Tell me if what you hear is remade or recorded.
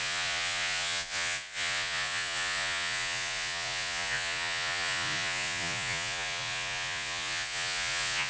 remade